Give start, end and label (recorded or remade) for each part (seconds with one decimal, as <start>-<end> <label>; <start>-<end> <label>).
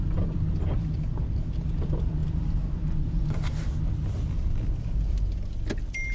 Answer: 0.0-6.1 recorded